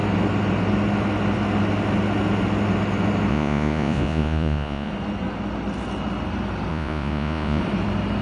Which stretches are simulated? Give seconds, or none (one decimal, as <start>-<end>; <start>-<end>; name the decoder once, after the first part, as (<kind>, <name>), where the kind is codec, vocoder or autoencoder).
3.3-4.9 (vocoder, Vocos); 6.7-7.6